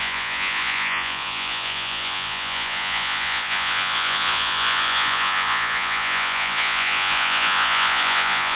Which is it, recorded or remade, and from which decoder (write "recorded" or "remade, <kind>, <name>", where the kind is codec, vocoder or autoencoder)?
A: remade, vocoder, Vocos